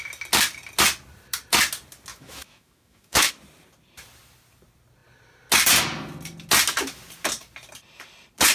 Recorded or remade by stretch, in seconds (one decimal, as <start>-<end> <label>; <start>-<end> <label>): 0.0-2.1 recorded; 2.1-3.3 remade; 3.3-8.5 recorded